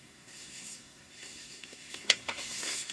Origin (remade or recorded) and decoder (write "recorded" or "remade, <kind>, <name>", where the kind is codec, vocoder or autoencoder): remade, codec, SNAC